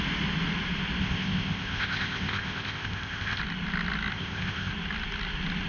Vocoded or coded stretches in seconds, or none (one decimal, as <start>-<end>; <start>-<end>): 1.0-3.4; 4.1-4.7